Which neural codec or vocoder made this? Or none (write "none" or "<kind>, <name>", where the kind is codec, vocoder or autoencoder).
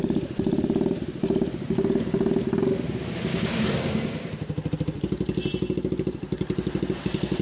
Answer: none